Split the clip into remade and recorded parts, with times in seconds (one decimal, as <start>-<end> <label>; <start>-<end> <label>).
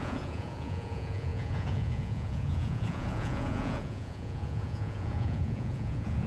0.0-6.3 remade